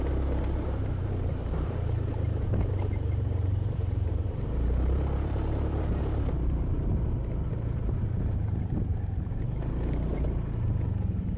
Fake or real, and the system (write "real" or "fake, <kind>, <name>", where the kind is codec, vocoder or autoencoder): fake, vocoder, BigVGAN v2